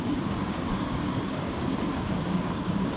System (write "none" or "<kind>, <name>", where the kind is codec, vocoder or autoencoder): codec, DAC